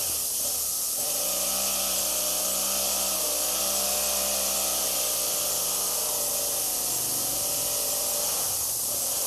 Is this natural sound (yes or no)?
yes